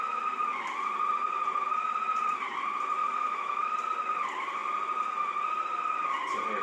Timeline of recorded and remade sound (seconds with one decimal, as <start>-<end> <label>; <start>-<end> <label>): 0.0-3.0 recorded; 3.0-3.7 remade; 3.7-6.6 recorded